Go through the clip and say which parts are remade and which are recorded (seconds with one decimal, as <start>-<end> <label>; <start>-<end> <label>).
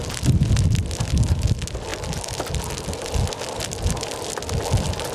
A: 0.0-5.1 recorded